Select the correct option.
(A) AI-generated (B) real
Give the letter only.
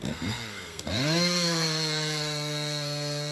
A